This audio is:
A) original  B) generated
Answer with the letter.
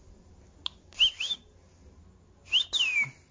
A